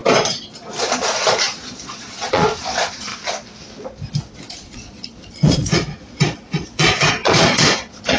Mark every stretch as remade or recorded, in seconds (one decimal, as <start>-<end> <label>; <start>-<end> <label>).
0.0-0.8 recorded; 0.8-3.1 remade; 3.1-4.3 recorded; 4.3-8.2 remade

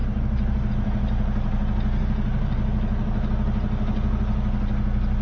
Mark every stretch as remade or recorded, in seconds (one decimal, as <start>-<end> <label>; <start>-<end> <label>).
0.0-5.2 recorded

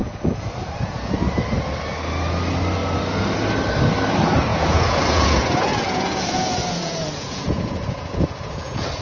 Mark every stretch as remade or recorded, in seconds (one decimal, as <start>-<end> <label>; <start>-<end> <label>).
0.0-1.1 remade; 1.1-4.5 recorded; 4.5-9.0 remade